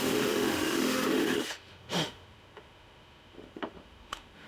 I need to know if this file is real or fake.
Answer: fake